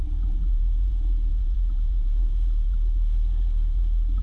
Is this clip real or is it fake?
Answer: fake